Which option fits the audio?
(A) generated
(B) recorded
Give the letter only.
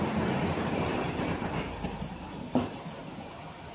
B